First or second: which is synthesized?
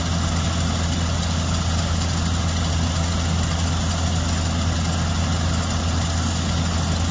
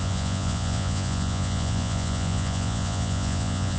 second